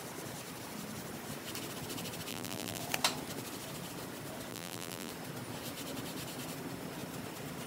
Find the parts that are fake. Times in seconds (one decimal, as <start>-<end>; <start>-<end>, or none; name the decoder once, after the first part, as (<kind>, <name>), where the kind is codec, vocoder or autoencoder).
2.3-2.8 (vocoder, BigVGAN v2); 4.5-5.1